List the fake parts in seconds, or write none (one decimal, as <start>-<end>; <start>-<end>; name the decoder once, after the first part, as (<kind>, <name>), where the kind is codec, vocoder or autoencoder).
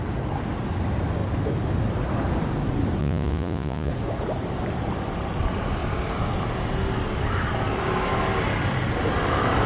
3.0-3.9 (vocoder, Vocos)